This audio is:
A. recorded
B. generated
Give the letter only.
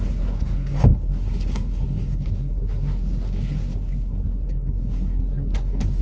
B